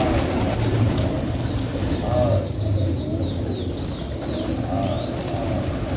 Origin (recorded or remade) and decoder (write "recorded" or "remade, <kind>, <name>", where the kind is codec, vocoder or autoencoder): recorded